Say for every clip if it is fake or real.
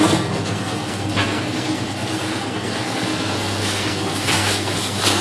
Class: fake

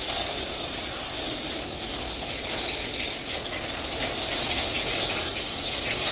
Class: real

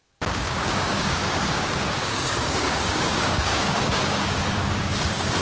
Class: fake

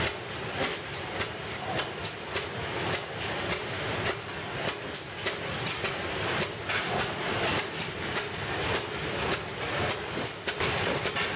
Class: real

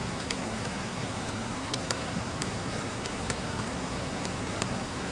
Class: fake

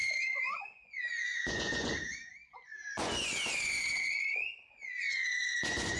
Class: fake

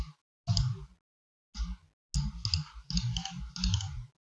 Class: real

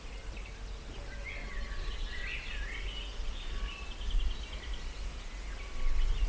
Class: real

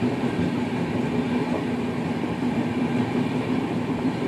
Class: real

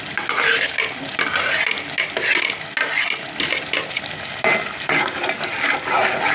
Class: real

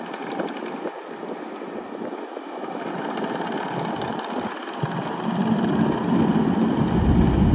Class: real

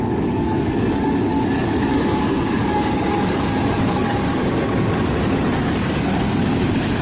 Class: fake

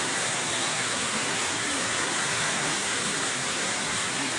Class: fake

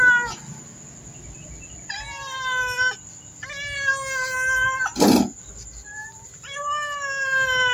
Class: real